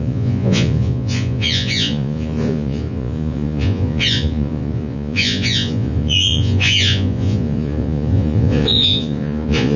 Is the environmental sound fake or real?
fake